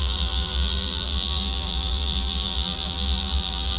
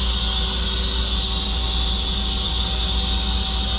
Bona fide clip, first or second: second